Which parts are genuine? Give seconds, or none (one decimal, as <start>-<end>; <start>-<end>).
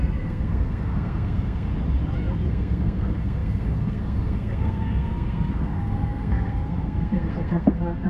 1.7-2.5